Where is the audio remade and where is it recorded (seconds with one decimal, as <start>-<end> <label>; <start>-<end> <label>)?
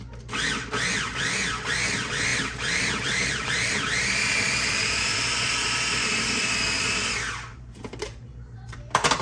0.0-2.3 recorded; 2.3-5.3 remade; 5.3-7.5 recorded; 7.5-8.7 remade; 8.7-9.2 recorded